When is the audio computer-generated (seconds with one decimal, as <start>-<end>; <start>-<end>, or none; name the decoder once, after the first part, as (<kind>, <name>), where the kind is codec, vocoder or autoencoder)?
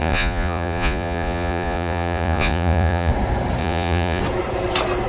0.0-3.1 (vocoder, Vocos); 3.6-4.2